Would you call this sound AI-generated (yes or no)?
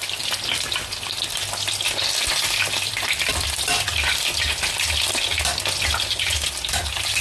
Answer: no